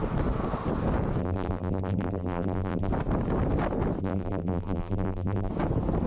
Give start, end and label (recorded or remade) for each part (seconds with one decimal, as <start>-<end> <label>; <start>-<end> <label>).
0.0-1.2 recorded; 1.2-2.9 remade; 2.9-4.0 recorded; 4.0-5.5 remade; 5.5-6.1 recorded